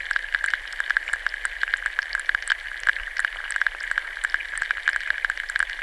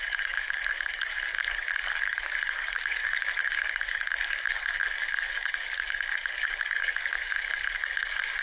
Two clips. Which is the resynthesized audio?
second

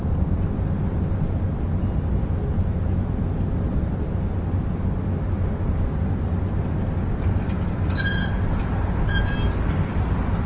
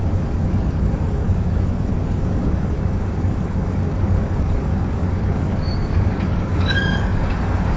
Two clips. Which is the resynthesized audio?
second